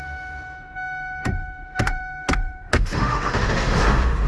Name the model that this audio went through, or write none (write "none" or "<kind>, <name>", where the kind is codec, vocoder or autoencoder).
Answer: autoencoder, DAC-VAE